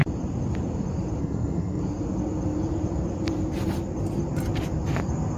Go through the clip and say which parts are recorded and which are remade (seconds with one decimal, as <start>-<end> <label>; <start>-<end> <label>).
0.0-1.2 recorded; 1.2-1.8 remade; 1.8-5.4 recorded